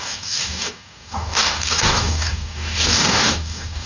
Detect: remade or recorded remade